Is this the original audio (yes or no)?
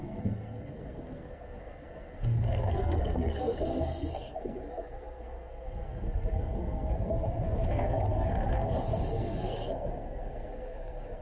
no